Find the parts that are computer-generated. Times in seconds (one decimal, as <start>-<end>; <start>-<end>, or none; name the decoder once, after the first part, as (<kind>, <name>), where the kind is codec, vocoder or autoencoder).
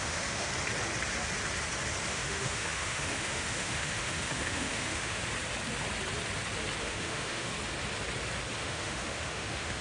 0.0-0.5 (autoencoder, DAC-VAE); 2.1-5.2; 6.8-7.5; 8.6-9.8